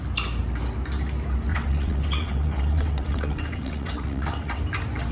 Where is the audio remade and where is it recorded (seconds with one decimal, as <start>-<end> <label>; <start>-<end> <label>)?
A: 0.0-1.5 recorded; 1.5-4.6 remade; 4.6-5.1 recorded